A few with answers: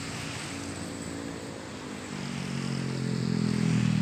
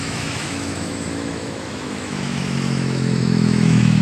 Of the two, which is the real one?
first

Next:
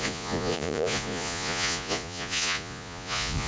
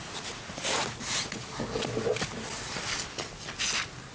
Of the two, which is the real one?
second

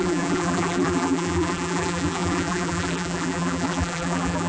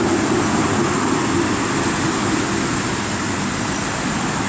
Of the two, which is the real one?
second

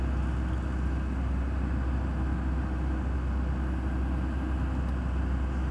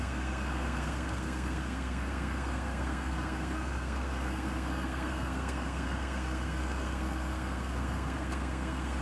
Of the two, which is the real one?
first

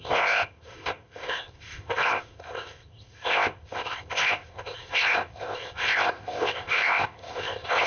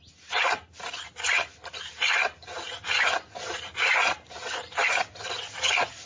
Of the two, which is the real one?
second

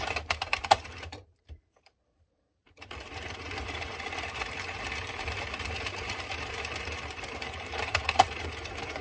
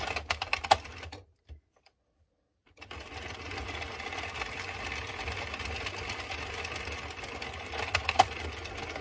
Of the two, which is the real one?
second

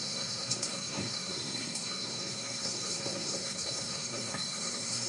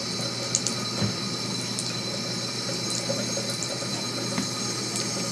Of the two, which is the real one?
second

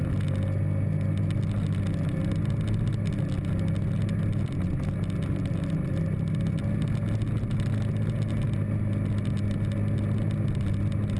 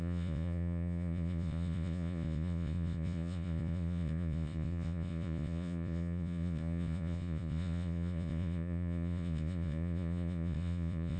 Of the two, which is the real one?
first